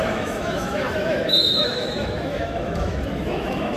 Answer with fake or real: fake